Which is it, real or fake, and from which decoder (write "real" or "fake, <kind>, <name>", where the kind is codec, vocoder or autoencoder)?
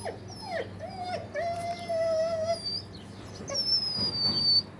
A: real